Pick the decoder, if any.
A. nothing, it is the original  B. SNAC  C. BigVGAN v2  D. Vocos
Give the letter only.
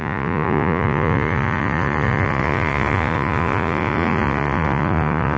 D